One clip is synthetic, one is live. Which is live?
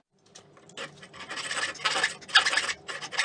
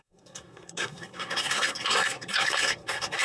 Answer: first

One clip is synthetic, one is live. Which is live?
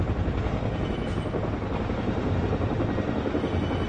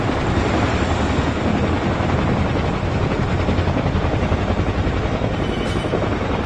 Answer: first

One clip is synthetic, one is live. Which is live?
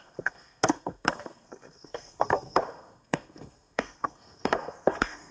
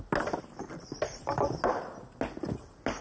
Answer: second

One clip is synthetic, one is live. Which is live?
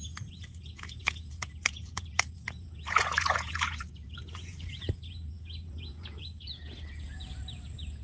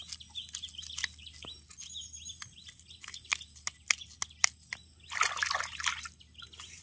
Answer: second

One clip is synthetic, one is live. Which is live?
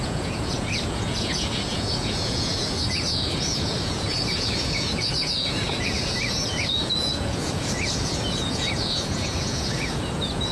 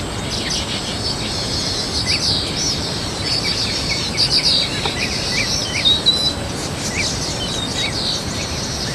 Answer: second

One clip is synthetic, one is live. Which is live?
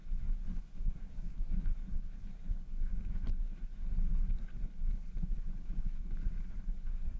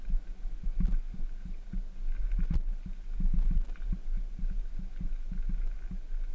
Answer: second